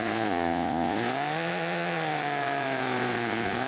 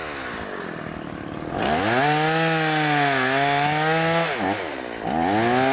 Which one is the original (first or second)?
second